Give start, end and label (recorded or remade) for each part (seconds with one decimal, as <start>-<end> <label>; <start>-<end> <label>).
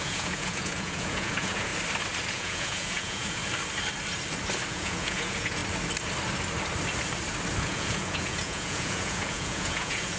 0.0-1.7 remade; 1.7-2.3 recorded; 2.3-3.4 remade; 3.4-4.7 recorded; 4.7-5.6 remade; 5.6-7.6 recorded; 7.6-10.2 remade